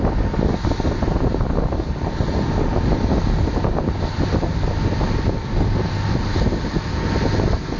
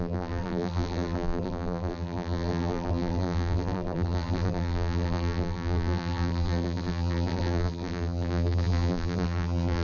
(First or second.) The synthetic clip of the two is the second